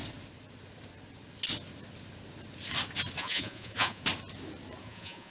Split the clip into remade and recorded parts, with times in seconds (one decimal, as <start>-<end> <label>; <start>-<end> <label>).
0.0-3.2 recorded; 3.2-4.0 remade; 4.0-4.8 recorded; 4.8-5.3 remade